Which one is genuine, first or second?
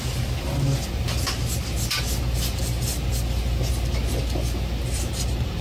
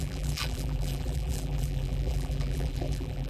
first